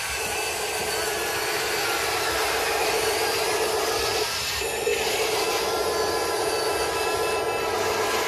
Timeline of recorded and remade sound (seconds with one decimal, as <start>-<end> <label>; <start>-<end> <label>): 0.0-8.3 recorded